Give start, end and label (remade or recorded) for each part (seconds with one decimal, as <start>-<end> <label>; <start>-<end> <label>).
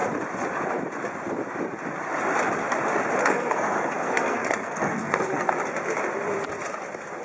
0.0-3.2 recorded; 3.2-5.5 remade; 5.5-7.2 recorded